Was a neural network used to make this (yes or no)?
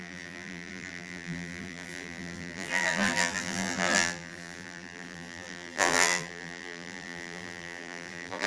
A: yes